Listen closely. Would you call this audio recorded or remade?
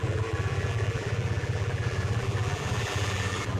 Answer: remade